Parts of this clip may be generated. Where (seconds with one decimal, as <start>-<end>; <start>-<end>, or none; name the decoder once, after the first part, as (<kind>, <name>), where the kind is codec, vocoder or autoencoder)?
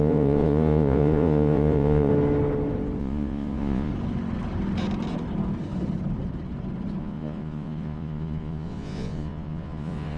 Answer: 0.0-2.1 (vocoder, Vocos); 3.0-3.9; 7.0-10.2